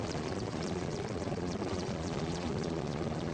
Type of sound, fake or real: fake